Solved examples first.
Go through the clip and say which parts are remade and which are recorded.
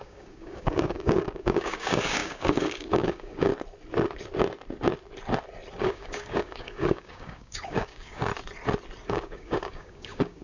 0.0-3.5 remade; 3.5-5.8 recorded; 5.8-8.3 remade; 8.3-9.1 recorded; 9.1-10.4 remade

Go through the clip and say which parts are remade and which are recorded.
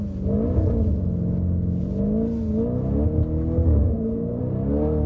0.0-3.8 recorded; 3.8-4.4 remade; 4.4-5.1 recorded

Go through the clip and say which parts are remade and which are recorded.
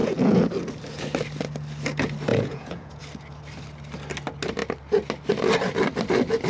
0.0-0.5 remade; 0.5-2.3 recorded; 2.3-3.0 remade; 3.0-6.5 recorded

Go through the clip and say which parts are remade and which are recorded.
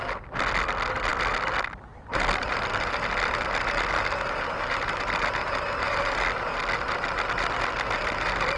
0.0-8.6 recorded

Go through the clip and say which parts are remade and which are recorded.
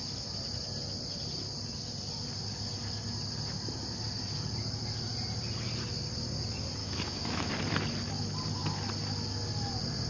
0.0-6.8 recorded; 6.8-7.5 remade; 7.5-10.1 recorded